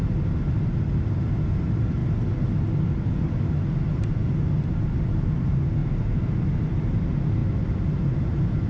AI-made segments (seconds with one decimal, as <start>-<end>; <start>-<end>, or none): none